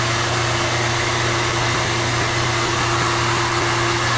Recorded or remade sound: recorded